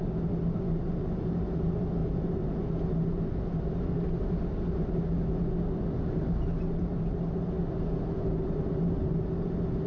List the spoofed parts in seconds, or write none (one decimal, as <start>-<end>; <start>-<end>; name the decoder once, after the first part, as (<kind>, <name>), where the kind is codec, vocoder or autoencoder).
none